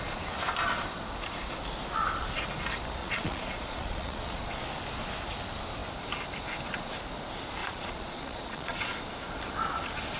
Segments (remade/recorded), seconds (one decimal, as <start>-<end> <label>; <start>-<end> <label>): 0.0-3.0 recorded; 3.0-4.5 remade; 4.5-7.6 recorded; 7.6-8.9 remade; 8.9-10.2 recorded